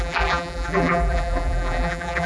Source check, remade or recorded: remade